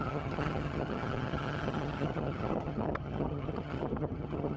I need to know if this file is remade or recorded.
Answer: remade